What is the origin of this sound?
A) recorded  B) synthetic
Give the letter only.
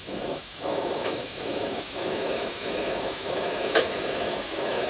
B